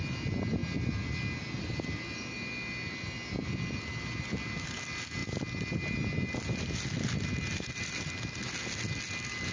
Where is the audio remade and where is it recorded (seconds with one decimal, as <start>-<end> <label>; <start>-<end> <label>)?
0.0-9.5 recorded